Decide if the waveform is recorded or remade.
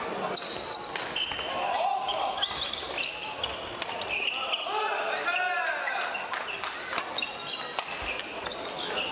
recorded